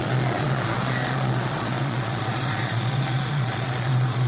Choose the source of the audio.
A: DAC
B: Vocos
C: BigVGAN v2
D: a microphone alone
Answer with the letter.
B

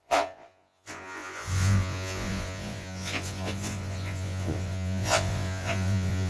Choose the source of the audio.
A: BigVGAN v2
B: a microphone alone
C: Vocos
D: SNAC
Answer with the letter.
C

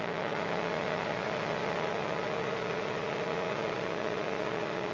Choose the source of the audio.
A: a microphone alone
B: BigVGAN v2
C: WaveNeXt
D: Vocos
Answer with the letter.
D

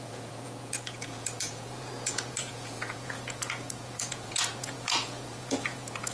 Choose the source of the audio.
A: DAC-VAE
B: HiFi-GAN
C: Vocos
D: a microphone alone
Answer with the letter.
C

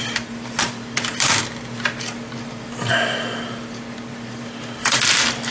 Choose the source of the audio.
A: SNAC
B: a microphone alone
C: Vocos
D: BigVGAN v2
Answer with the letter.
B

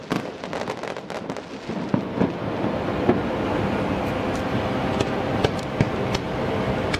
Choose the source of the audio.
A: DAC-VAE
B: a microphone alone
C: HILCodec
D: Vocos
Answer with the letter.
B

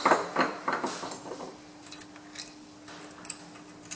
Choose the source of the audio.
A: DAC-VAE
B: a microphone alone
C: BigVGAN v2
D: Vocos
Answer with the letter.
B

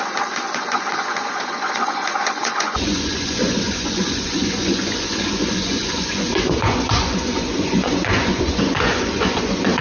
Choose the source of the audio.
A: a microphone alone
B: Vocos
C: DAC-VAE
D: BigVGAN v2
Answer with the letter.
B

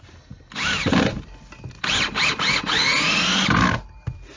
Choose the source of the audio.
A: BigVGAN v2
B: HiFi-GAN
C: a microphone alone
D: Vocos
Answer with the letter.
C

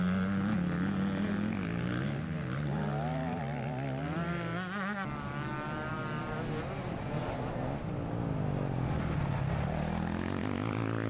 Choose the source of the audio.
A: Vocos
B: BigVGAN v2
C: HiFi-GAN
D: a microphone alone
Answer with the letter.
D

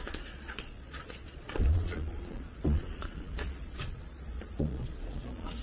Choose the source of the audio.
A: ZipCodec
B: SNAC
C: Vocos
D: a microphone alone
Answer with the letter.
C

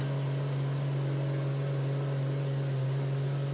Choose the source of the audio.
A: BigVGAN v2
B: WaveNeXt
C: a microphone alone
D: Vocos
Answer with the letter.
C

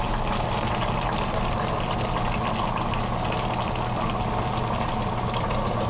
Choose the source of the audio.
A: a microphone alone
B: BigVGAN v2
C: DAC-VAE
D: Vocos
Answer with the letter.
A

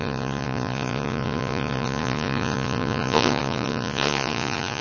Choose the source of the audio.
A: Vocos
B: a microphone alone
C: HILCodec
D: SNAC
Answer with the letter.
A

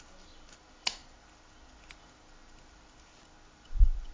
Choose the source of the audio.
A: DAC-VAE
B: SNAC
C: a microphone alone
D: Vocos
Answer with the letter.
C